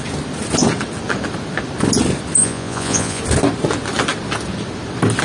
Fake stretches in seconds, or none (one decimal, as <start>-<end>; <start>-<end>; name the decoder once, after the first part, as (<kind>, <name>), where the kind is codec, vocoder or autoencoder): 2.4-3.2 (vocoder, Vocos)